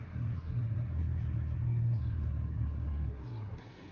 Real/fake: fake